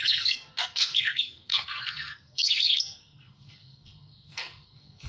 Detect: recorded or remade remade